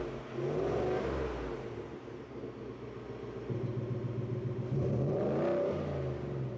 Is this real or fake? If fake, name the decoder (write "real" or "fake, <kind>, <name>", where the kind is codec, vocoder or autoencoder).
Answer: real